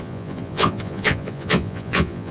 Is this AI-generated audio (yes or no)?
yes